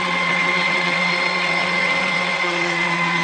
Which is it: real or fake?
fake